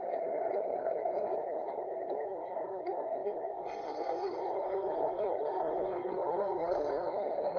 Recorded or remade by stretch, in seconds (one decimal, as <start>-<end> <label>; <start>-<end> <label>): 0.0-7.6 remade